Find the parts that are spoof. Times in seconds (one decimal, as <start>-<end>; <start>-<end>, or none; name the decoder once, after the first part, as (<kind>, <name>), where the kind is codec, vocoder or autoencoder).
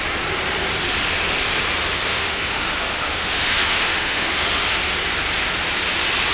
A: 2.1-4.9 (autoencoder, DAC-VAE)